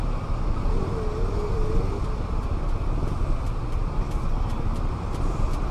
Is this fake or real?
real